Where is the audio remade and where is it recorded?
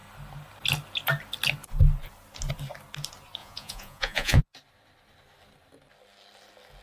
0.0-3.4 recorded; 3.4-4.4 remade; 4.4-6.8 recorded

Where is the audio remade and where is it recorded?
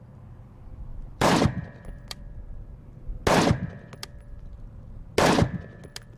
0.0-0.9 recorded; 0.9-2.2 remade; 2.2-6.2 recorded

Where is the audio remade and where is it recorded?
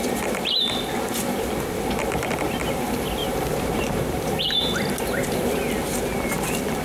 0.0-6.8 recorded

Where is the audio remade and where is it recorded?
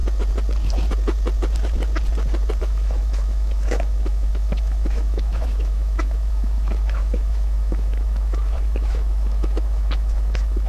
0.0-2.6 recorded; 2.6-10.7 remade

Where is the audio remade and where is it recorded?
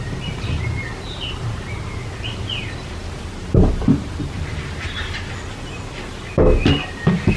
0.0-3.0 recorded; 3.0-5.3 remade; 5.3-7.4 recorded